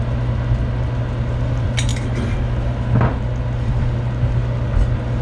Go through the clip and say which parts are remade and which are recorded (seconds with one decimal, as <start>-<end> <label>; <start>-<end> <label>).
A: 0.0-5.2 recorded